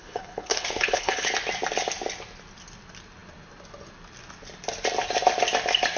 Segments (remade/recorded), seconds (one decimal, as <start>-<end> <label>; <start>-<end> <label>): 0.0-1.3 remade; 1.3-6.0 recorded